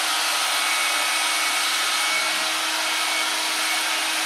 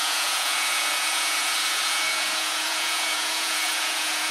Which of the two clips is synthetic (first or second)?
second